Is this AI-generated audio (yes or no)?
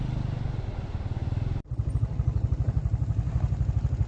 no